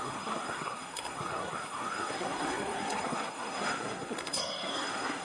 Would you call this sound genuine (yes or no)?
no